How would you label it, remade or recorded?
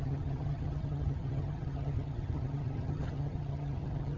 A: remade